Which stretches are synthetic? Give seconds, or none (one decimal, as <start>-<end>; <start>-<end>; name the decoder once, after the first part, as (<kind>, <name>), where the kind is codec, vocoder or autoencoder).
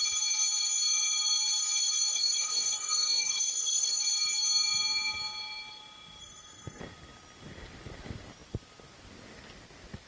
2.1-4.0 (codec, DAC); 6.2-6.8